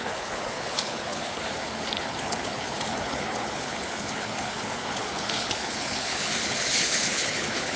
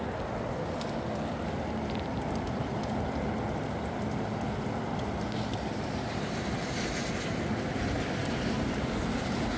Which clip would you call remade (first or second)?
first